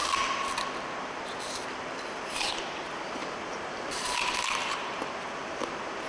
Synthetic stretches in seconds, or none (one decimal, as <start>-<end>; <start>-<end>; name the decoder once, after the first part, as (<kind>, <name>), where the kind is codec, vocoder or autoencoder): 1.7-6.1 (vocoder, BigVGAN v2)